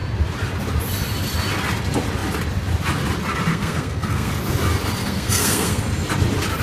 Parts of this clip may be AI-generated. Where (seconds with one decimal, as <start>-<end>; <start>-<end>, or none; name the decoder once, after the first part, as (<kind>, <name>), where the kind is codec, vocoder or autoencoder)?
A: 3.5-4.3 (codec, SNAC); 5.0-5.8